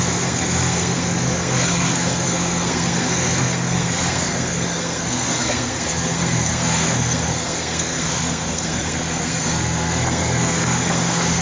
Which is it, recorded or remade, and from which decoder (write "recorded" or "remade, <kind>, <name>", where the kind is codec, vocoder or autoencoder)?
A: remade, codec, SNAC